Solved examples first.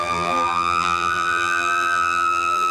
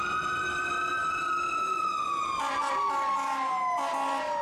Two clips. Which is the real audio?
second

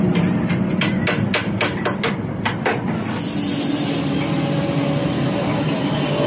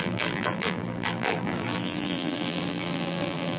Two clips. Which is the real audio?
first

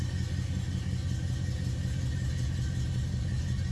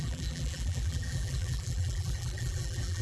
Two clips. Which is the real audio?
first